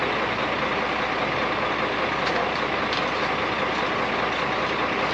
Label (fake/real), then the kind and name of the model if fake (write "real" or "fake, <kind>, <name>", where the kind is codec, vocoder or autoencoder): real